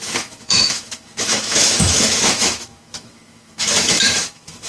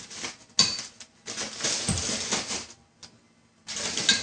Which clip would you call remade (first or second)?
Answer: first